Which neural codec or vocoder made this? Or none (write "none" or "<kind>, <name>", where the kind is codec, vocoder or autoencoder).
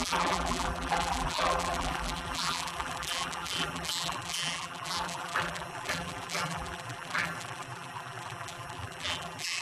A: vocoder, BigVGAN v2